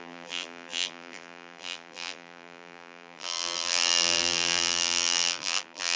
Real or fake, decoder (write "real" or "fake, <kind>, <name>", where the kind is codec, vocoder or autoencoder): fake, vocoder, BigVGAN v2